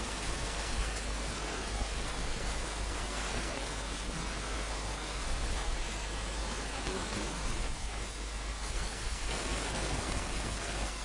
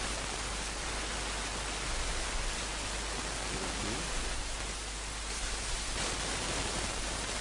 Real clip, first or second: second